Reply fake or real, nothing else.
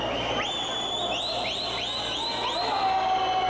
real